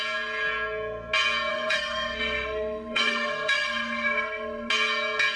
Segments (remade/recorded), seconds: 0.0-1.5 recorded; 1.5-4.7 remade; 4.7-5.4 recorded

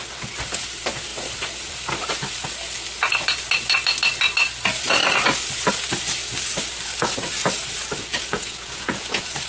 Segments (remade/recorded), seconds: 0.0-8.1 recorded; 8.1-9.5 remade

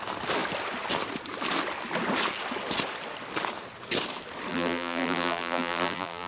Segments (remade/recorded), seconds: 0.0-4.5 recorded; 4.5-6.3 remade

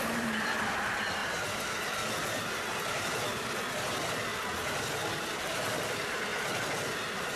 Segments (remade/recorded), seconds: 0.0-1.2 remade; 1.2-5.4 recorded; 5.4-6.3 remade; 6.3-7.4 recorded

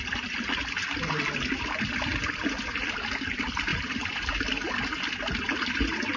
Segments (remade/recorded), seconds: 0.0-3.7 recorded; 3.7-4.5 remade; 4.5-6.2 recorded

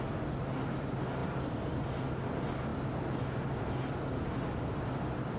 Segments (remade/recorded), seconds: 0.0-1.2 recorded; 1.2-1.8 remade; 1.8-5.4 recorded

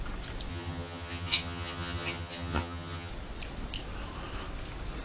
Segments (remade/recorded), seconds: 0.0-0.5 recorded; 0.5-3.1 remade; 3.1-5.0 recorded

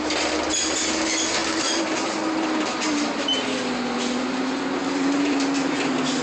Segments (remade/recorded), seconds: 0.0-1.4 recorded; 1.4-3.2 remade; 3.2-4.8 recorded; 4.8-5.8 remade; 5.8-6.2 recorded